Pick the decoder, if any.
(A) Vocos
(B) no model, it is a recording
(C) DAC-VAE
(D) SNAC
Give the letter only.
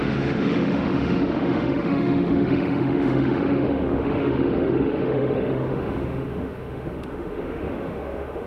C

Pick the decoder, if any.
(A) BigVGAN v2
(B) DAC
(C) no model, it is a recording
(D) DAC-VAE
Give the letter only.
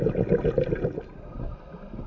C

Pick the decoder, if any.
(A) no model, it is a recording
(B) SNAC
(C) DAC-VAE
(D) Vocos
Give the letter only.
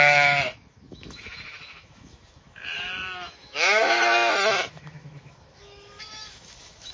C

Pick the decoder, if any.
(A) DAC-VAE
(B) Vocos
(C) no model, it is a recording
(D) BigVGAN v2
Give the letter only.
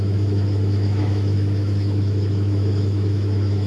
A